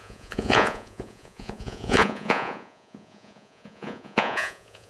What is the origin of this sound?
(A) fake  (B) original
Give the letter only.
A